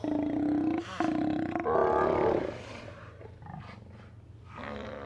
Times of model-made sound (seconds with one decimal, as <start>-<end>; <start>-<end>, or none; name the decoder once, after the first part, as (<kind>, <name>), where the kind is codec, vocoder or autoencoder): none